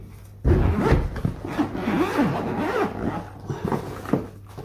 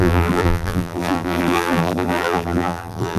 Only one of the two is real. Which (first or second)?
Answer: first